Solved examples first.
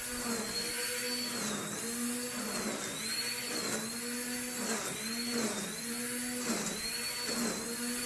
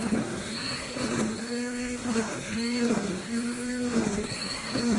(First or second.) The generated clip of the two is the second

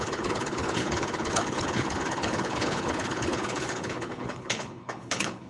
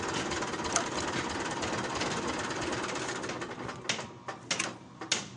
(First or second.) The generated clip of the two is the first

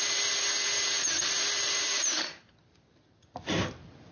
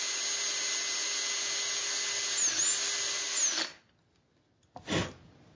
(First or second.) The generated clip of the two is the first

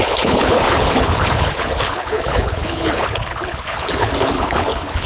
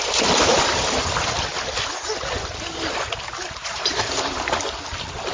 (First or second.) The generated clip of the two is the first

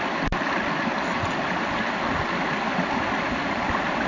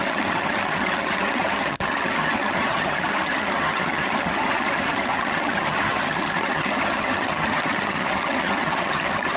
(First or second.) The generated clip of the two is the second